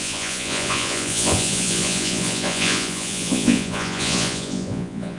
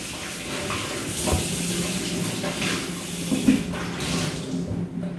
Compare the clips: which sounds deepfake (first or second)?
first